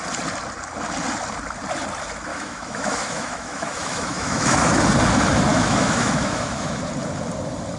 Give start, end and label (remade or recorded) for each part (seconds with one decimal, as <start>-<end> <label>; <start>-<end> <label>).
0.0-2.3 recorded; 2.3-4.8 remade; 4.8-5.5 recorded; 5.5-6.8 remade; 6.8-7.8 recorded